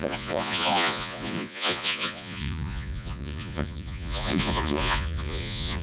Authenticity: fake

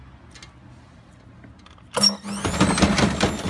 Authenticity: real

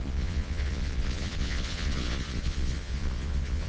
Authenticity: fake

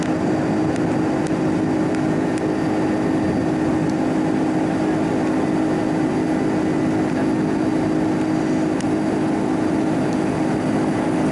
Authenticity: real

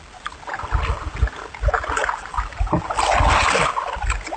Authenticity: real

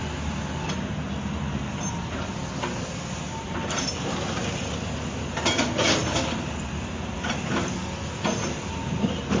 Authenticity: real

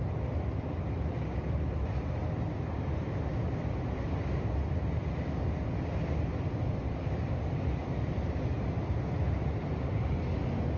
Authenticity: real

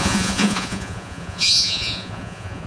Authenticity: fake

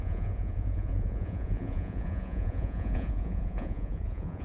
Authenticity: fake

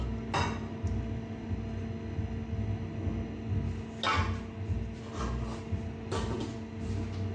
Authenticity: real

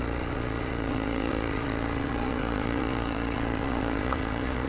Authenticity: fake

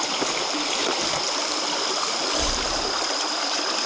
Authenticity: real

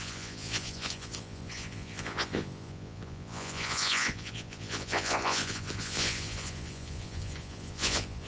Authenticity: fake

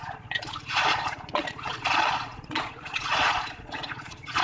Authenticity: fake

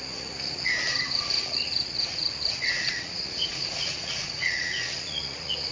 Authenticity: fake